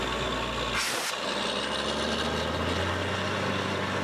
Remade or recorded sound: recorded